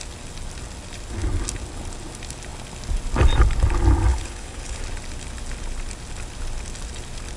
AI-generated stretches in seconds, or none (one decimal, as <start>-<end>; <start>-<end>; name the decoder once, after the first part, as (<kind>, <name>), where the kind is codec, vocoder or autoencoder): 4.1-4.8 (codec, HILCodec)